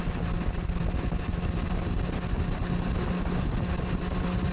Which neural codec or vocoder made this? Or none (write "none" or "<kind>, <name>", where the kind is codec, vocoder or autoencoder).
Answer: none